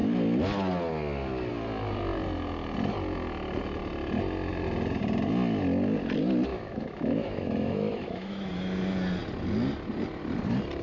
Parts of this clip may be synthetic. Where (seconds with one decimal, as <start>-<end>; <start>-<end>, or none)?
6.5-8.5